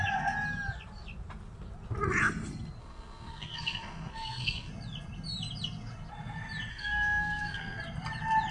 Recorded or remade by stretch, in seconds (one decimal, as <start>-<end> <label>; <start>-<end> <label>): 0.0-2.8 recorded; 2.8-4.7 remade; 4.7-6.7 recorded; 6.7-7.8 remade; 7.8-8.5 recorded